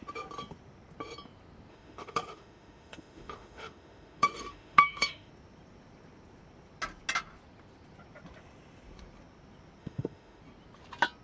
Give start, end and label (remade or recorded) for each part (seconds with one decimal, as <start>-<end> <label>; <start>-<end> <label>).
0.0-1.7 recorded; 1.7-5.3 remade; 5.3-9.8 recorded; 9.8-10.4 remade; 10.4-11.2 recorded